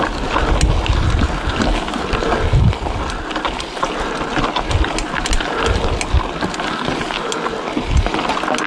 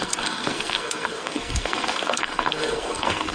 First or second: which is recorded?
first